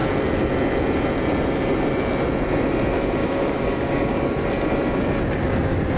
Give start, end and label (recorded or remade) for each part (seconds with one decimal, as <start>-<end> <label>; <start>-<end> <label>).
0.0-3.2 recorded; 3.2-4.5 remade; 4.5-6.0 recorded